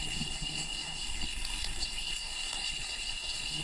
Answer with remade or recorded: remade